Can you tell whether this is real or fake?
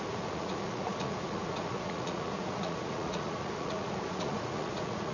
fake